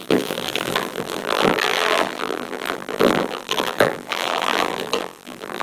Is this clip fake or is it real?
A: fake